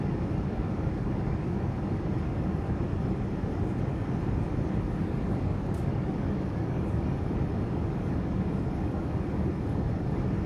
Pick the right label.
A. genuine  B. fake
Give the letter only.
B